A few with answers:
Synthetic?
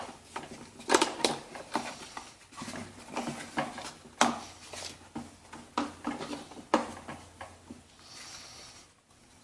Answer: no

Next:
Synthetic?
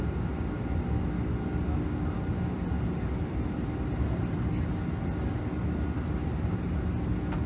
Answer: no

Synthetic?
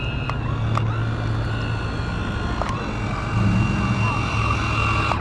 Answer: no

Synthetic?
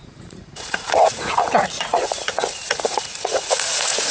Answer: yes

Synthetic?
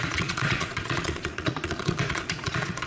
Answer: yes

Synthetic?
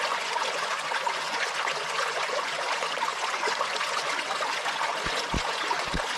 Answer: yes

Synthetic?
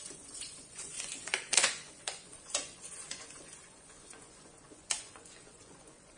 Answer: yes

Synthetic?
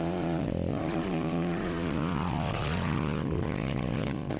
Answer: yes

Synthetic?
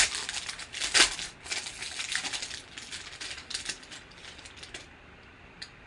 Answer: no